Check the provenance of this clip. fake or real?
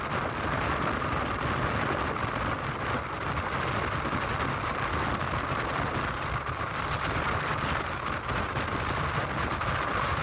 real